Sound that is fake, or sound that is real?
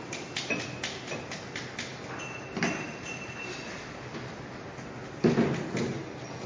real